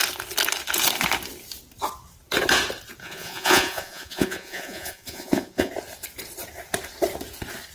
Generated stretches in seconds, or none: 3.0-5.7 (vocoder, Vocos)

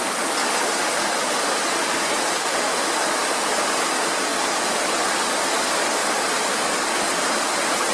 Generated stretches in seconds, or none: 2.4-3.0 (autoencoder, DAC-VAE)